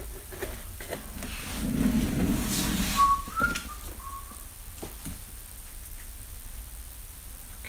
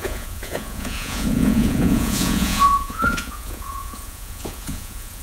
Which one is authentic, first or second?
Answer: first